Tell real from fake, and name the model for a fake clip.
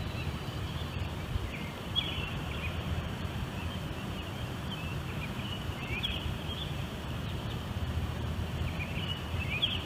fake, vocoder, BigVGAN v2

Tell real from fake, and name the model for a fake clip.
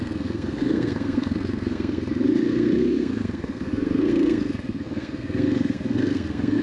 fake, codec, SNAC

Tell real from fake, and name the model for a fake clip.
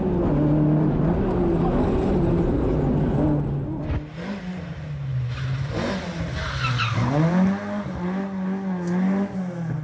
real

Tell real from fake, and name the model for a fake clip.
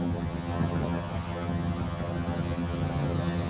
fake, vocoder, HiFi-GAN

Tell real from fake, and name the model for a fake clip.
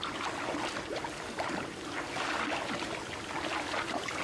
real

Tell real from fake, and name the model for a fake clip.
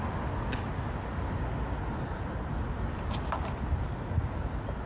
real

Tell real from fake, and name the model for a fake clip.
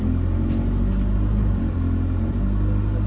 real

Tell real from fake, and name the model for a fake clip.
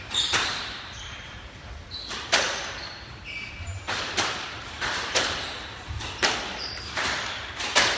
fake, vocoder, BigVGAN v2